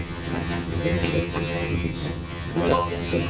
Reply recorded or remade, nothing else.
remade